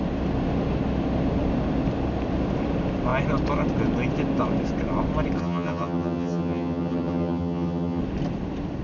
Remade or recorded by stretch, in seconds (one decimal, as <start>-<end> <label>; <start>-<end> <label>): 0.0-5.4 recorded; 5.4-8.0 remade; 8.0-8.8 recorded